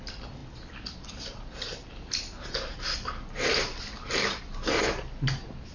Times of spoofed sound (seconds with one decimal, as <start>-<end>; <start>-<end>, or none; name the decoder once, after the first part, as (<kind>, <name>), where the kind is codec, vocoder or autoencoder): none